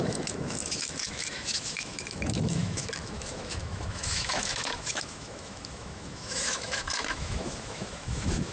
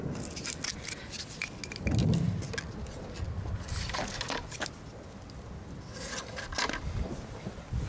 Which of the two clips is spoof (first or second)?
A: first